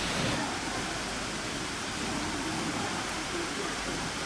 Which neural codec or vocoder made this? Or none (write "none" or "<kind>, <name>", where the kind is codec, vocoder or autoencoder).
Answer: vocoder, BigVGAN v2